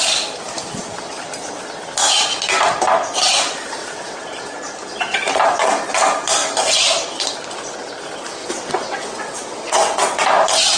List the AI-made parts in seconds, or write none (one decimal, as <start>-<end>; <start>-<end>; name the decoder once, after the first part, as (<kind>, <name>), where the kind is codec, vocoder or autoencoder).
3.8-4.4 (vocoder, WaveNeXt); 8.4-10.2